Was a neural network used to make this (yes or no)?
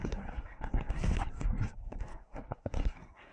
yes